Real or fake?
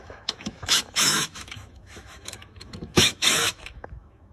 fake